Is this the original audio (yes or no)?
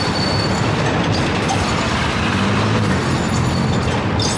yes